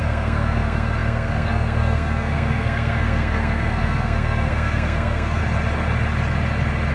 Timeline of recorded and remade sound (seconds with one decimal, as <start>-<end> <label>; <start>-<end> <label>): 0.0-5.4 remade; 5.4-6.9 recorded